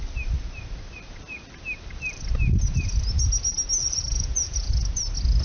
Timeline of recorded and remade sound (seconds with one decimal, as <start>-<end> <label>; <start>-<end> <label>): 0.0-3.8 recorded; 3.8-4.7 remade; 4.7-5.4 recorded